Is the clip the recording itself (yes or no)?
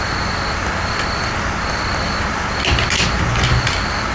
yes